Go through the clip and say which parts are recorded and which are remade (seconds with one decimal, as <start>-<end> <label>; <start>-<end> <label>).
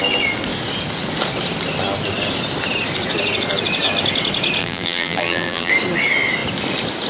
0.0-4.6 recorded; 4.6-5.7 remade; 5.7-7.1 recorded